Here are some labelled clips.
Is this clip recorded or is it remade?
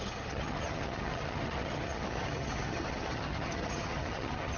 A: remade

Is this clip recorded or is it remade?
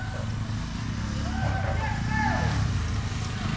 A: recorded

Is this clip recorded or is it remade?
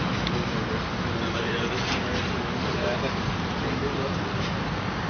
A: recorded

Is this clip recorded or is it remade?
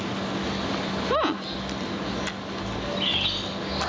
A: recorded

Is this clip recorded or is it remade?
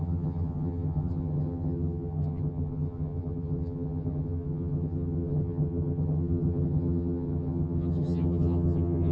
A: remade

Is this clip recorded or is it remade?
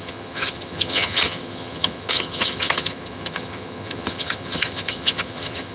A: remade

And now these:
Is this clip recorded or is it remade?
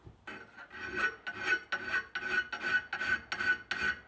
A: recorded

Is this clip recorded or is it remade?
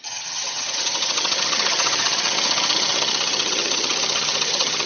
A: remade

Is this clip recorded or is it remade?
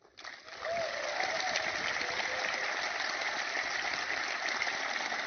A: recorded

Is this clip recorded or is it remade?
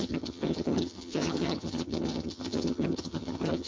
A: remade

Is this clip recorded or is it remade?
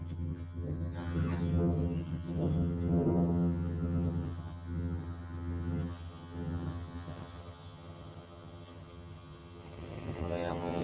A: remade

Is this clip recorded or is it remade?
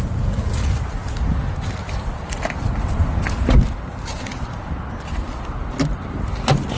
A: recorded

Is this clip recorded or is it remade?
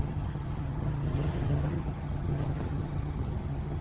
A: remade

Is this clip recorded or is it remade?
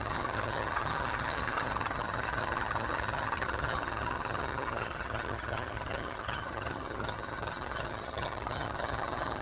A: remade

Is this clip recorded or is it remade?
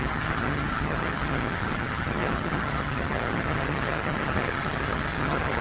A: remade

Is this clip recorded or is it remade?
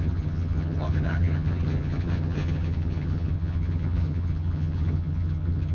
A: remade